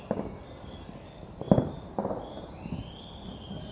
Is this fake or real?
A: real